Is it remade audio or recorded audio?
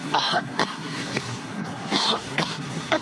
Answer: remade